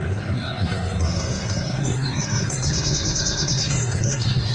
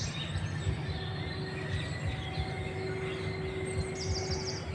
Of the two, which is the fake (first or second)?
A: first